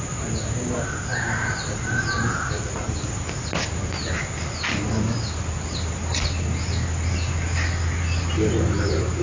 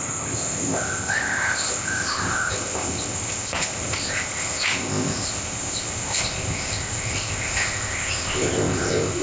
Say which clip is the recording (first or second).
first